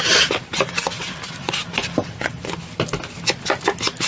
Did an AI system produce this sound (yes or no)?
no